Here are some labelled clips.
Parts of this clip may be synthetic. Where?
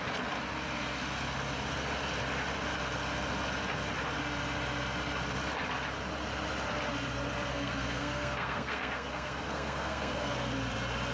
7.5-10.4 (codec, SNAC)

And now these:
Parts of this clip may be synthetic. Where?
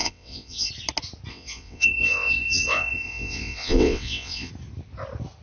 0.0-0.7 (vocoder, WaveNeXt); 1.3-4.5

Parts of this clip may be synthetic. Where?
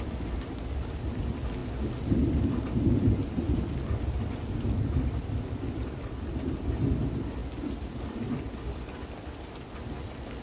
none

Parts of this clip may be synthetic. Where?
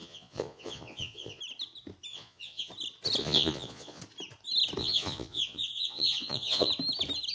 0.0-1.4 (vocoder, Vocos); 2.1-2.7; 3.2-4.0; 4.8-6.7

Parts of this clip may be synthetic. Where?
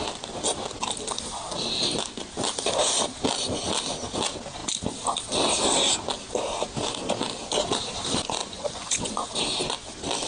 8.4-9.3 (vocoder, Vocos)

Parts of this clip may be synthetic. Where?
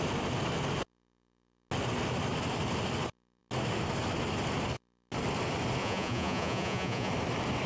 5.8-7.1 (vocoder, Vocos)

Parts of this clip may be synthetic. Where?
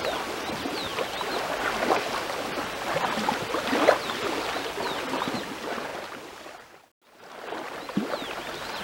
none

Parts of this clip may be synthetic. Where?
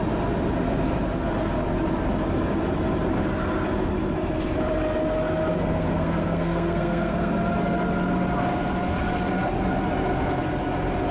5.5-7.3 (codec, SNAC)